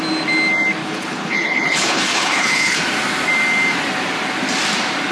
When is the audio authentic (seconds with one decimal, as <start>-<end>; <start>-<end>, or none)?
0.0-0.8; 2.8-5.1